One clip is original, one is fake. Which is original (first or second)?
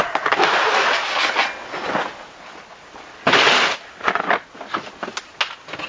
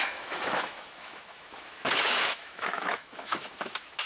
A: first